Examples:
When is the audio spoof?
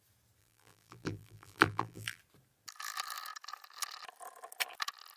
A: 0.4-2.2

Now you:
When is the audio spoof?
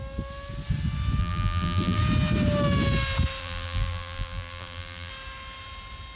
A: 1.2-2.0; 3.4-5.1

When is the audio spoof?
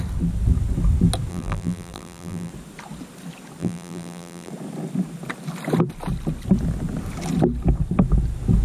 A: 1.3-2.5; 3.6-4.5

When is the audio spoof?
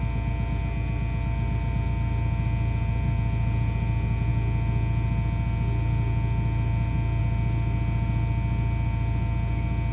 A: none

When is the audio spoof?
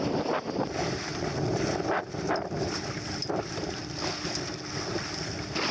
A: 0.0-5.7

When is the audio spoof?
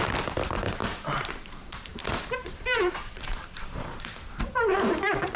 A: 0.0-5.4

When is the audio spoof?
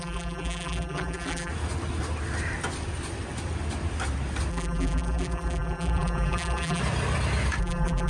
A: 0.0-1.5; 4.5-6.8; 7.6-8.1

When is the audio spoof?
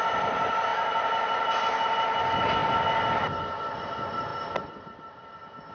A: 2.6-3.4